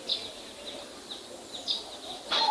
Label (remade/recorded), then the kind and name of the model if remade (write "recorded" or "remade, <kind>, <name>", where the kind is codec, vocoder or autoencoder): recorded